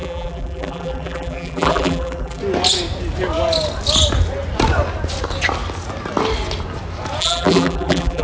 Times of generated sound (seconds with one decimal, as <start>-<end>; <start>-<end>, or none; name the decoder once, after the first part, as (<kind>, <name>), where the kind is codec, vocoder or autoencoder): 0.0-2.4 (vocoder, BigVGAN v2); 7.2-8.2